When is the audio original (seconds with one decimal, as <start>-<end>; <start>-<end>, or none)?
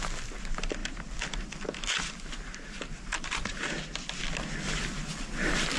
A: 0.0-5.8